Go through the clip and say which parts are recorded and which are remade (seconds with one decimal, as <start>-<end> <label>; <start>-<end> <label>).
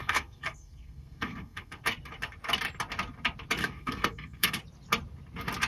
0.0-1.8 remade; 1.8-3.6 recorded; 3.6-4.6 remade; 4.6-5.7 recorded